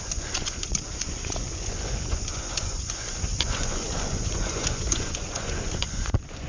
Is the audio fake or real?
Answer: fake